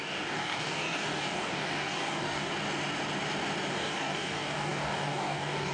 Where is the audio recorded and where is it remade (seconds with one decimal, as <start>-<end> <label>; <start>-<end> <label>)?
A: 0.0-2.5 remade; 2.5-3.7 recorded; 3.7-5.7 remade